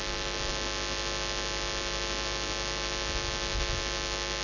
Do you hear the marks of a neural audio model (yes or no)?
no